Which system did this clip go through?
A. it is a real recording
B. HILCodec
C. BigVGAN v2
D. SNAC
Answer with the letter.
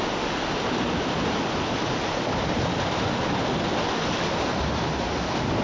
A